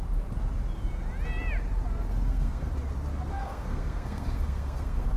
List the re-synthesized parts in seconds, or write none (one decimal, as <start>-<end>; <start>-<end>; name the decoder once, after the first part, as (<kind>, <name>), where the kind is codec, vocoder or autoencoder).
2.1-2.7 (codec, SNAC); 3.4-5.2